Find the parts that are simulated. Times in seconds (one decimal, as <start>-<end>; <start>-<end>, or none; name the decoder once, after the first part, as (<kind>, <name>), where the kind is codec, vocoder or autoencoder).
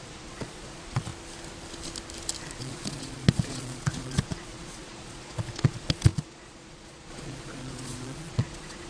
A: 0.0-1.1 (vocoder, Vocos); 2.6-8.9